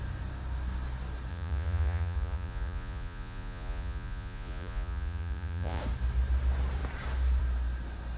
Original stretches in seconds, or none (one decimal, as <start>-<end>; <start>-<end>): 0.0-1.3; 5.8-8.2